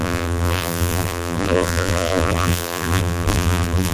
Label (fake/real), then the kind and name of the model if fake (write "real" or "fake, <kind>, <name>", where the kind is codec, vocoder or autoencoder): fake, vocoder, BigVGAN v2